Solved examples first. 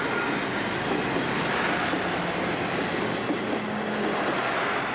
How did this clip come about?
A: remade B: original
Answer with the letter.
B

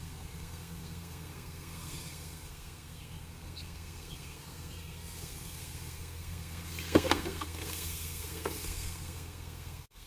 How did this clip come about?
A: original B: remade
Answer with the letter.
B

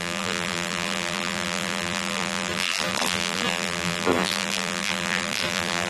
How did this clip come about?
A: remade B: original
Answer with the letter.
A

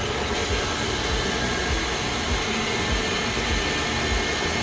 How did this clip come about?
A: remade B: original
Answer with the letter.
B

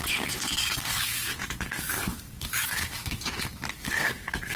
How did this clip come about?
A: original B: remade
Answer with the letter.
B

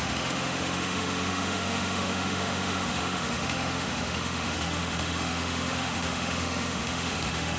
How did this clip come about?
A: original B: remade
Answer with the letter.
B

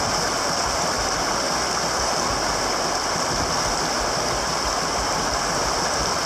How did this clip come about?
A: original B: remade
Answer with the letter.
A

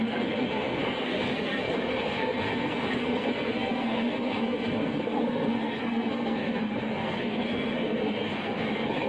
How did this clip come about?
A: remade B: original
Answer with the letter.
A